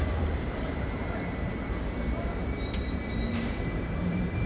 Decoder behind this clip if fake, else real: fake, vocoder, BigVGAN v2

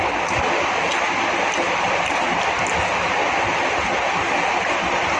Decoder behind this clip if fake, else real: real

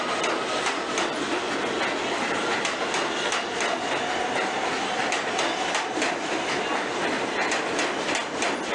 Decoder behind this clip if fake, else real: real